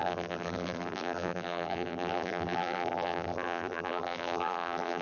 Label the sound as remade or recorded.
remade